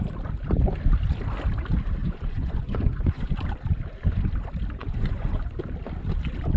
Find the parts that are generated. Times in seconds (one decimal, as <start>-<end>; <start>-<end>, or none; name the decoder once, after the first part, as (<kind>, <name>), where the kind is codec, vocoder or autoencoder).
2.0-3.3 (vocoder, Vocos); 4.8-5.6